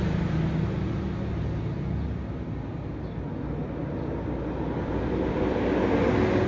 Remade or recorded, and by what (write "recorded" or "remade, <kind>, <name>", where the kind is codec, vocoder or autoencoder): recorded